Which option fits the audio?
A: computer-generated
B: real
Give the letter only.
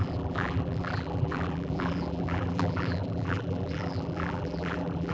A